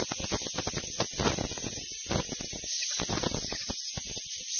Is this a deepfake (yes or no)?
no